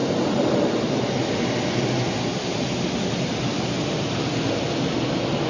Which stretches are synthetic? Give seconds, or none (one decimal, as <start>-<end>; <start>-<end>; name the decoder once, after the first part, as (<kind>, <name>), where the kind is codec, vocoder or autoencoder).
none